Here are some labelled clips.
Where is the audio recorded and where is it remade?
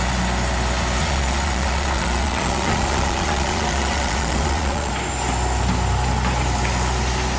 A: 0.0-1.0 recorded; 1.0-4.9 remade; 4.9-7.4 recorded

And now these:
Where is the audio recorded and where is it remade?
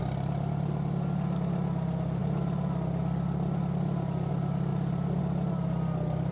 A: 0.0-6.3 recorded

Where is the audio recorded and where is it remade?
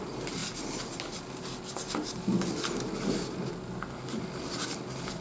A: 0.0-5.2 recorded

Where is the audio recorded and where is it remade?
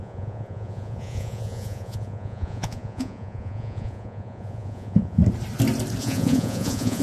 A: 0.0-5.2 remade; 5.2-6.0 recorded; 6.0-7.0 remade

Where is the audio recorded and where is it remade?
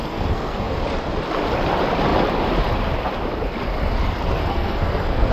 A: 0.0-0.8 remade; 0.8-4.4 recorded; 4.4-5.3 remade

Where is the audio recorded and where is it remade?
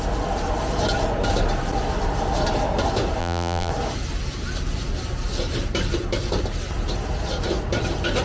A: 0.0-3.2 recorded; 3.2-3.7 remade; 3.7-8.2 recorded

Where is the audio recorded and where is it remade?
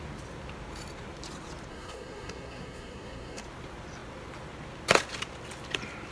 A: 0.0-1.7 recorded; 1.7-3.4 remade; 3.4-6.1 recorded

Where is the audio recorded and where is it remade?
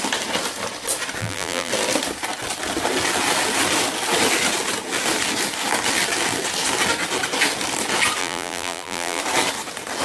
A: 0.0-1.2 recorded; 1.2-1.7 remade; 1.7-8.2 recorded; 8.2-9.2 remade; 9.2-10.0 recorded